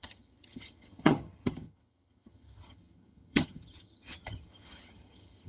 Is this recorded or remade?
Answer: remade